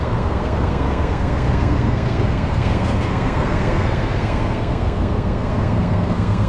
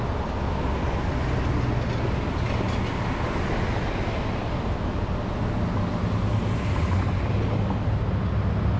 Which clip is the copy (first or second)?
first